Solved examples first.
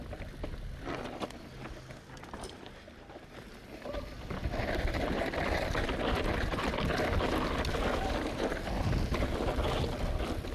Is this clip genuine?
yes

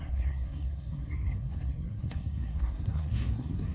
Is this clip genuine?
no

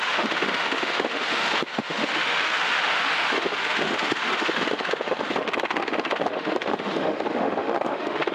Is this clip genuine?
no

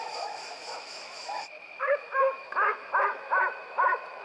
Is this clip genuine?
no